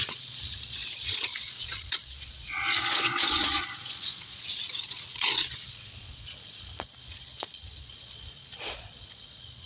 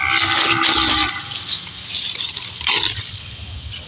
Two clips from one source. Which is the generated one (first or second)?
first